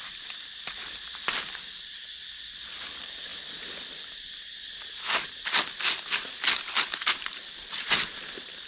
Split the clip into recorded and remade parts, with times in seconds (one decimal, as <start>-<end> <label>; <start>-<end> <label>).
0.0-3.3 remade; 3.3-8.1 recorded; 8.1-8.7 remade